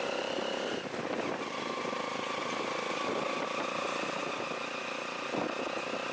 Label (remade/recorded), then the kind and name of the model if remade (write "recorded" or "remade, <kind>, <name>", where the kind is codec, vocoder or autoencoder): recorded